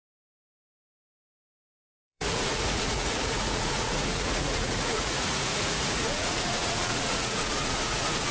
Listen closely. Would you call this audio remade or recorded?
remade